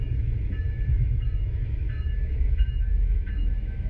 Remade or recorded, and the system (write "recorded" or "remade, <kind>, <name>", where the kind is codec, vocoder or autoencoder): remade, autoencoder, DAC-VAE